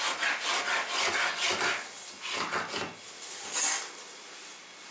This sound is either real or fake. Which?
real